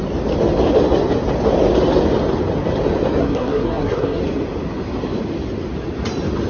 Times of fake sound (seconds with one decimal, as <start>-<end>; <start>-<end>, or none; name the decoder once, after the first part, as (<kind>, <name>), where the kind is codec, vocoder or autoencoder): 3.2-4.2 (codec, SNAC)